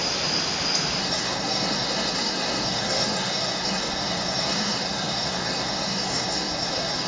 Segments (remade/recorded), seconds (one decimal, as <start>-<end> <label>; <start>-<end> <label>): 0.0-1.0 recorded; 1.0-7.1 remade